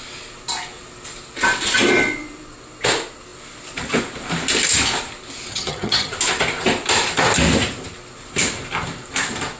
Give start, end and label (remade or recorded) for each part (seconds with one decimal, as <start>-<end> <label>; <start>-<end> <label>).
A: 0.0-5.5 recorded; 5.5-6.1 remade; 6.1-9.6 recorded